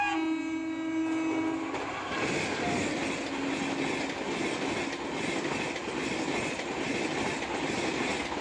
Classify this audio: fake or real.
real